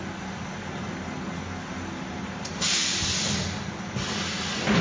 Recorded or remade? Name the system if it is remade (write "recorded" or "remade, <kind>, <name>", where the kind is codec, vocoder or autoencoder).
recorded